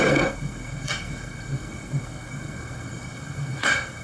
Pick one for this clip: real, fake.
fake